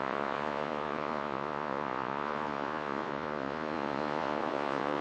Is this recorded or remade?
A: remade